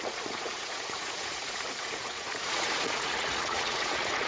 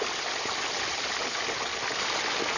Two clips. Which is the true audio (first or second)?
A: second